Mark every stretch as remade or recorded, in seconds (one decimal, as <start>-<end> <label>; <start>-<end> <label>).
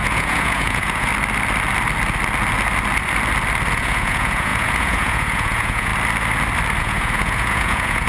0.0-1.1 remade; 1.1-3.7 recorded; 3.7-5.9 remade; 5.9-6.8 recorded; 6.8-8.1 remade